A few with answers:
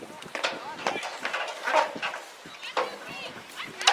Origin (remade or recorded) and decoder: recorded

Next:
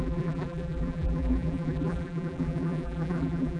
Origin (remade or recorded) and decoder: remade, vocoder, BigVGAN v2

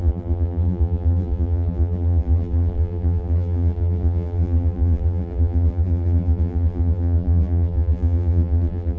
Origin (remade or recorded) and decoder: remade, vocoder, BigVGAN v2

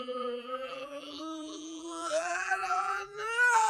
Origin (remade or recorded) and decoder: remade, vocoder, BigVGAN v2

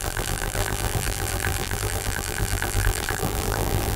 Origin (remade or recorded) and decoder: remade, vocoder, BigVGAN v2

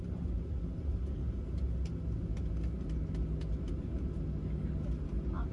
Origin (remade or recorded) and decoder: recorded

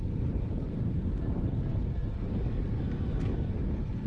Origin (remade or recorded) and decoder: remade, vocoder, BigVGAN v2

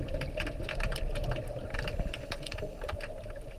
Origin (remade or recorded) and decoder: recorded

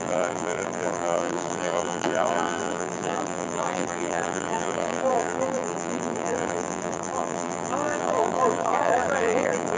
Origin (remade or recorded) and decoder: remade, vocoder, BigVGAN v2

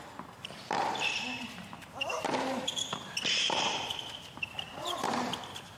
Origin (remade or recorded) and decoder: remade, vocoder, BigVGAN v2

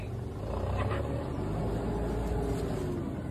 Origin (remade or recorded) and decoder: recorded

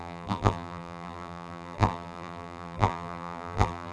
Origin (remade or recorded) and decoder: remade, vocoder, BigVGAN v2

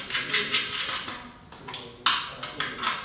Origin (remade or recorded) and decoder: recorded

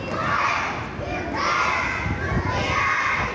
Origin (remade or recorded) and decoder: recorded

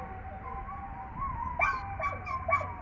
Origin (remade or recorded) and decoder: recorded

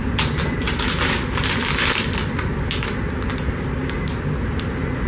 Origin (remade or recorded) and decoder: remade, vocoder, BigVGAN v2